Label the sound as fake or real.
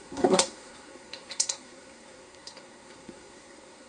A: fake